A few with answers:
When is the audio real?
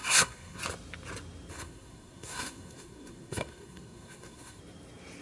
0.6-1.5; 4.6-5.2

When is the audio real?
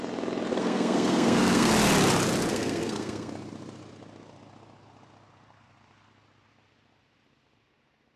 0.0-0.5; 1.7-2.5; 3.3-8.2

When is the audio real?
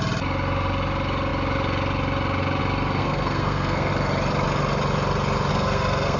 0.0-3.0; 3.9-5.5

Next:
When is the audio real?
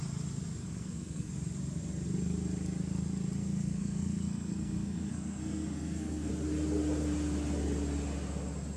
0.0-0.6; 1.3-3.4; 6.3-8.8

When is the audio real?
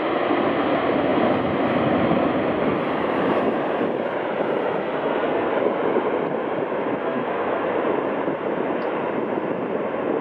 0.0-4.8; 5.5-7.0; 7.6-10.2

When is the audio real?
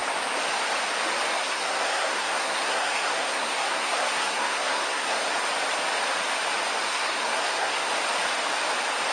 0.0-1.3; 5.2-6.8; 7.9-9.1